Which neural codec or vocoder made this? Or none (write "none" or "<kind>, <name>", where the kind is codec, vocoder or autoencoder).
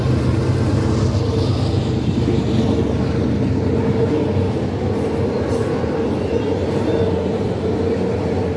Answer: none